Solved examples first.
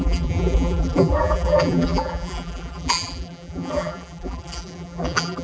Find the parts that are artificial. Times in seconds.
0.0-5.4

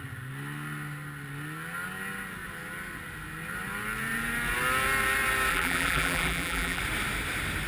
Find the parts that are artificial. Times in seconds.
5.5-6.8

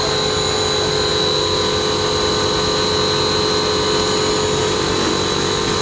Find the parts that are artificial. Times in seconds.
none

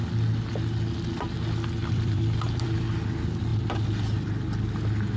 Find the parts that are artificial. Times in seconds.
1.8-2.9; 3.5-4.0

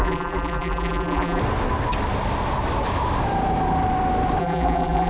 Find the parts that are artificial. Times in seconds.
0.0-1.4; 4.4-5.1